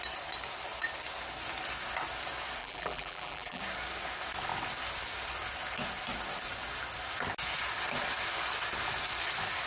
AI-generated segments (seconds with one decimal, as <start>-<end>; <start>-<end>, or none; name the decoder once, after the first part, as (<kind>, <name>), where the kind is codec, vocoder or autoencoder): 2.6-3.6 (vocoder, BigVGAN v2)